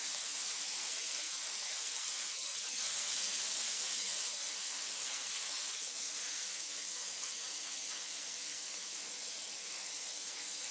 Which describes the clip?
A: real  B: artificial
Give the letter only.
B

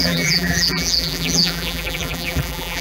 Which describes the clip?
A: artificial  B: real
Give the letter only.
A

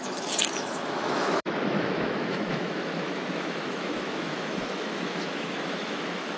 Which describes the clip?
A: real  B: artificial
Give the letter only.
B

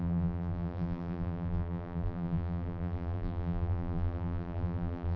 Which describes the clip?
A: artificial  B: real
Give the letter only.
A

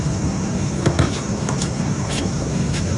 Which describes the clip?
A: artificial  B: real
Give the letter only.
A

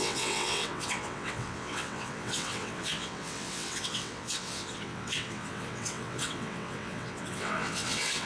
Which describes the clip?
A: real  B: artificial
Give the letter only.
B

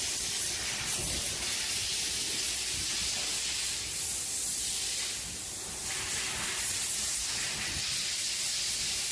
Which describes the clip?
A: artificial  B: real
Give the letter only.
B